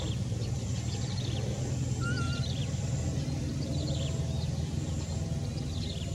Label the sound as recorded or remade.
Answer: recorded